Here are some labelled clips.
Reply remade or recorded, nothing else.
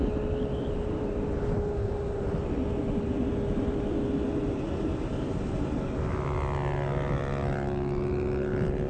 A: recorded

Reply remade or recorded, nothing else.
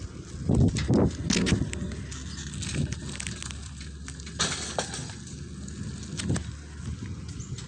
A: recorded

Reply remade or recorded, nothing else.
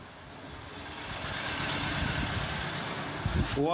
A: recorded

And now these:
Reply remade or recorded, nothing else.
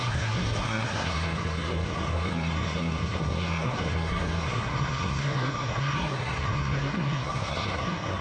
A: remade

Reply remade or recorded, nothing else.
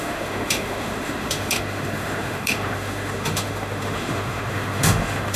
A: remade